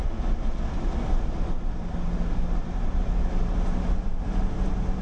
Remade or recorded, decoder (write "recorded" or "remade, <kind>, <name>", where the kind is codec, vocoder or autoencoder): recorded